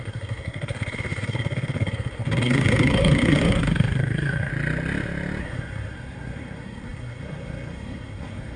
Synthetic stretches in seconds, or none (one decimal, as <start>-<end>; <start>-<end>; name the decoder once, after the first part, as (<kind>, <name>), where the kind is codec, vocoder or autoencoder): 0.0-4.5 (codec, SNAC); 5.4-8.6